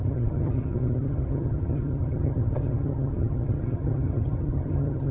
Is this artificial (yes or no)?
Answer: yes